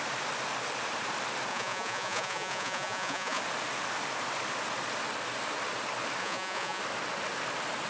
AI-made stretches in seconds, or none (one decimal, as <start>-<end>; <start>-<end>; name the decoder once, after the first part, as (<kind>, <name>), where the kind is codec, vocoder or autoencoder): 1.5-3.4 (vocoder, Vocos); 6.2-6.8